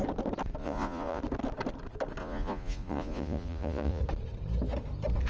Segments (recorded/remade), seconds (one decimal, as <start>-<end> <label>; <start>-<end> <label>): 0.0-0.6 recorded; 0.6-1.2 remade; 1.2-2.2 recorded; 2.2-4.0 remade; 4.0-5.3 recorded